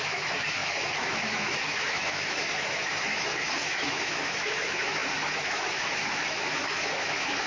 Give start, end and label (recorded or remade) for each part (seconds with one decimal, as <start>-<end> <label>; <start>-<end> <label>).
0.0-7.5 remade